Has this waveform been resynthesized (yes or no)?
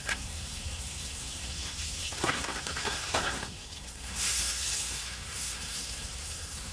yes